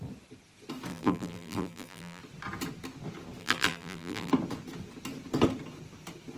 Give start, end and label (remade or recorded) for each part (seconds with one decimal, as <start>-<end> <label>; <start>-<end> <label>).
0.0-0.9 recorded; 0.9-2.2 remade; 2.2-3.4 recorded; 3.4-4.3 remade; 4.3-6.4 recorded